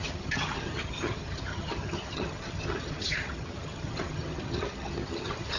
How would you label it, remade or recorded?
remade